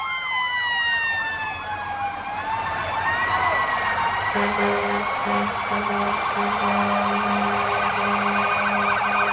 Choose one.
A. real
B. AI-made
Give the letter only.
A